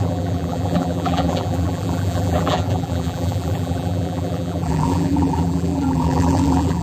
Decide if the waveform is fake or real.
fake